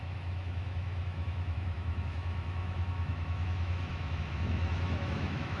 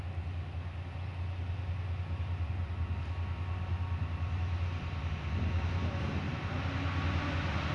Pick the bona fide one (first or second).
second